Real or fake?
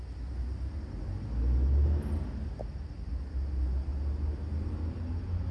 real